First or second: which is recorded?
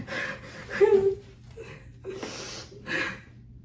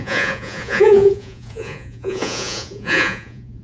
first